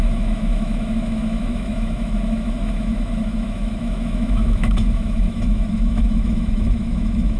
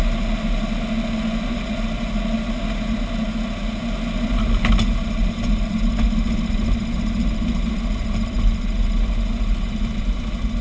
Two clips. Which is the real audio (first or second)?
second